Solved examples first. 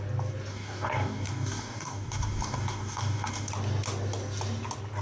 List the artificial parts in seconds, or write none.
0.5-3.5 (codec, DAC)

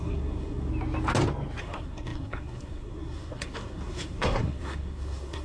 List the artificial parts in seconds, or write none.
0.0-0.7 (codec, SNAC); 1.6-5.4

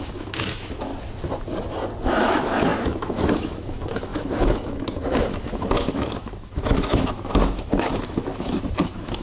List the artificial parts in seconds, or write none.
0.0-0.9 (autoencoder, DAC-VAE); 2.1-9.2

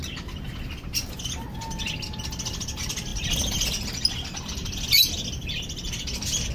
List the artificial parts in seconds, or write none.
none